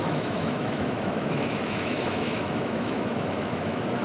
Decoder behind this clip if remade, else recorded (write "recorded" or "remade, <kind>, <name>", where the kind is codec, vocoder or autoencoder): remade, autoencoder, DAC-VAE